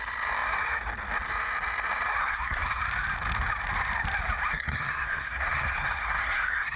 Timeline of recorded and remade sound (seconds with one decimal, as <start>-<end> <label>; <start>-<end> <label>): 0.0-2.2 recorded; 2.2-2.8 remade; 2.8-4.5 recorded; 4.5-6.8 remade